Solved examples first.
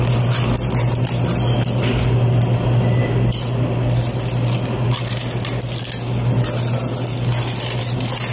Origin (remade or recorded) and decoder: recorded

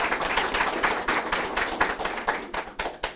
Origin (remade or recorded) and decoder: recorded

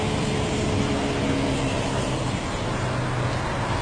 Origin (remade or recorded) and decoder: recorded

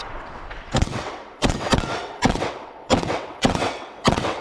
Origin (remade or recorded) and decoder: remade, vocoder, WaveNeXt